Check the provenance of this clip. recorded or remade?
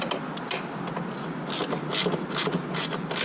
recorded